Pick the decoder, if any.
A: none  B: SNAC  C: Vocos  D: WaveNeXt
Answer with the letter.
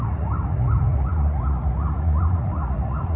C